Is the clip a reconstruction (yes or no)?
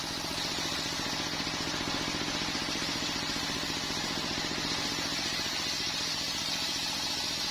no